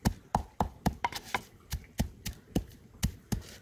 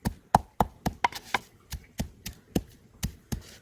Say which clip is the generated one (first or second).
first